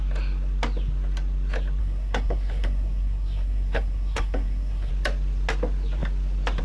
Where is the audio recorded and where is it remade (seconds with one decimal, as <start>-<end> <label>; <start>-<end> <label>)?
0.0-1.8 recorded; 1.8-4.9 remade; 4.9-6.6 recorded